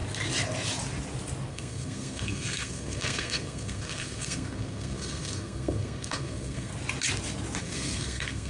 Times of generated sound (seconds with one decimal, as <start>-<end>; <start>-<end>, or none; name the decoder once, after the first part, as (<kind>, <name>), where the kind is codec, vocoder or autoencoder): 1.5-6.7 (codec, SNAC); 7.6-8.5